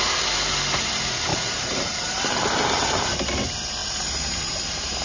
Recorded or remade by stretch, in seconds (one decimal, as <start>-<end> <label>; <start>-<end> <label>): 0.0-1.3 recorded; 1.3-3.0 remade; 3.0-3.8 recorded; 3.8-4.6 remade; 4.6-5.0 recorded

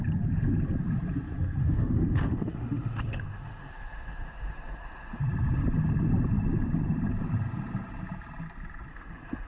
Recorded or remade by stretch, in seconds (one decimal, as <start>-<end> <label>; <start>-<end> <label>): 0.0-1.6 recorded; 1.6-5.2 remade; 5.2-8.9 recorded; 8.9-9.5 remade

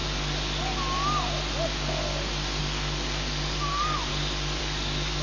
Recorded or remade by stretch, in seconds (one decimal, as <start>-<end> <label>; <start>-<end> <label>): 0.0-2.6 recorded; 2.6-4.1 remade; 4.1-4.6 recorded; 4.6-5.2 remade

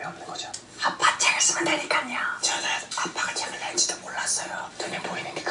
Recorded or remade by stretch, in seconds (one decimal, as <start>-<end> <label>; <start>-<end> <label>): 0.0-5.5 recorded

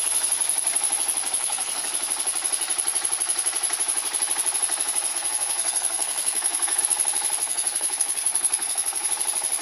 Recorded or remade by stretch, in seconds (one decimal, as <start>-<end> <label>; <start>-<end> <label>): 0.0-1.4 recorded; 1.4-1.9 remade; 1.9-5.1 recorded; 5.1-6.8 remade; 6.8-7.4 recorded; 7.4-9.1 remade; 9.1-9.6 recorded